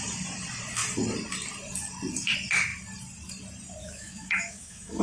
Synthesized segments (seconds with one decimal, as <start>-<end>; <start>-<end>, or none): 3.8-5.0